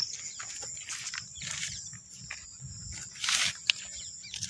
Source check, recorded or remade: recorded